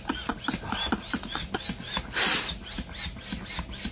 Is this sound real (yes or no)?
yes